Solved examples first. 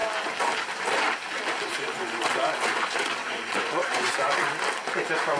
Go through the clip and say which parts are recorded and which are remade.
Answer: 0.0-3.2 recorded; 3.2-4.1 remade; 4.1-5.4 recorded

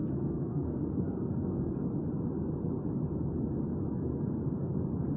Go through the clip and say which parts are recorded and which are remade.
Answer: 0.0-1.8 remade; 1.8-4.1 recorded; 4.1-4.7 remade; 4.7-5.2 recorded

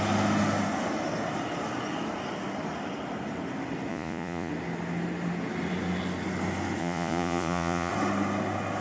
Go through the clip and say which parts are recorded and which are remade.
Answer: 0.0-3.9 recorded; 3.9-4.5 remade; 4.5-6.8 recorded; 6.8-7.9 remade; 7.9-8.8 recorded